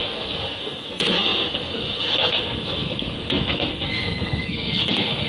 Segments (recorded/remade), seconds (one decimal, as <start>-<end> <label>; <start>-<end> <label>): 0.0-5.3 remade